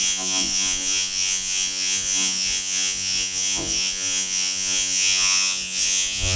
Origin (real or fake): fake